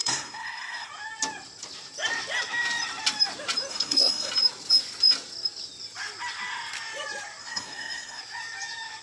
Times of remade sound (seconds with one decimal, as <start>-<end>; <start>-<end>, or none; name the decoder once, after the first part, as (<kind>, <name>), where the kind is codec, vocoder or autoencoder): 0.0-0.9 (codec, SNAC); 3.7-4.3; 7.4-8.2